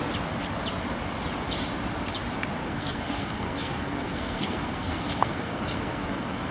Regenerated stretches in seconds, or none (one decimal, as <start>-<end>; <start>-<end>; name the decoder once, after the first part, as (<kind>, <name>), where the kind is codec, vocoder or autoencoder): 2.6-6.5 (codec, SNAC)